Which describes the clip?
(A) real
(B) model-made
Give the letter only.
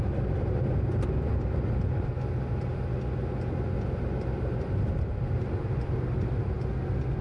A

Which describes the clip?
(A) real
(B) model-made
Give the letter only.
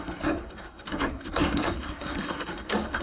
B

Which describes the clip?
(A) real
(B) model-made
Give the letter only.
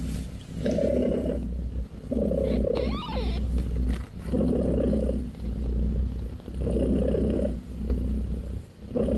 A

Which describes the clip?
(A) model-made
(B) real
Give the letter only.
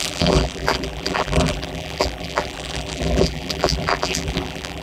A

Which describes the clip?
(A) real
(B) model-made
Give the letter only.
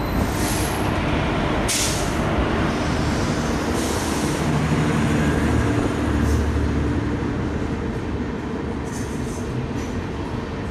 A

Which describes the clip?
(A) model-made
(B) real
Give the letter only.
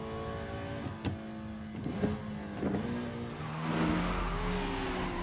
B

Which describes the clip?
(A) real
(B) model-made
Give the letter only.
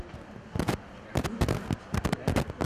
A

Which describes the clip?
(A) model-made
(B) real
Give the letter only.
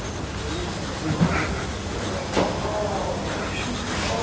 B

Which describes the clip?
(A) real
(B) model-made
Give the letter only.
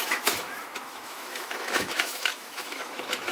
B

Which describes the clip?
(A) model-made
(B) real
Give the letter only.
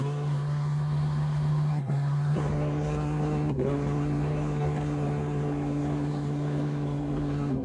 A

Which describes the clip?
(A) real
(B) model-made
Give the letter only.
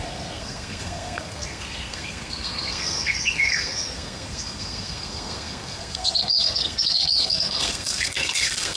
B